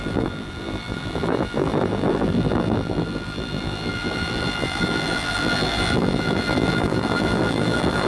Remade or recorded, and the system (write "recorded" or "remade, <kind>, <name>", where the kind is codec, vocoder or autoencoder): remade, vocoder, BigVGAN v2